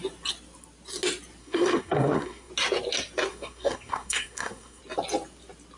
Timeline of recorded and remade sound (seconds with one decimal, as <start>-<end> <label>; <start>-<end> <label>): 0.0-1.4 recorded; 1.4-2.5 remade; 2.5-3.3 recorded; 3.3-4.8 remade; 4.8-5.8 recorded